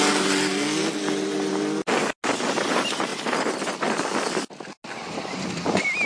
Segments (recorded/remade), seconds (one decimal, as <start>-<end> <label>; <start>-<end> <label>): 0.0-3.1 recorded; 3.1-4.7 remade; 4.7-6.1 recorded